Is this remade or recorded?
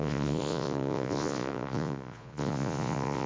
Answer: remade